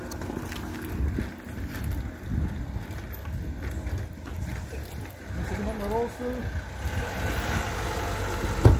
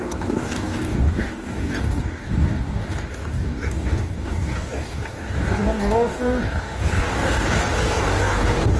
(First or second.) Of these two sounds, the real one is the first